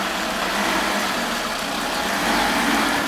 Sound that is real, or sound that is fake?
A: real